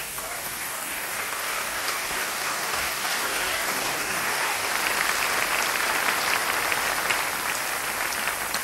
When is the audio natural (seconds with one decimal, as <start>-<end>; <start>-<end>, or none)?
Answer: 4.7-8.6